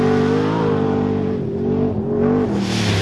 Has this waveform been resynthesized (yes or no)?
no